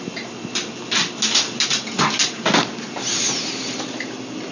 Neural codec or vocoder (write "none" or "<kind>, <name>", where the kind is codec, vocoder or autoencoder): none